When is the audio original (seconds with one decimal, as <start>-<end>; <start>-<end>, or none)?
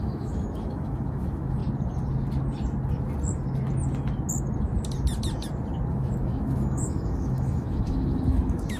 1.6-5.9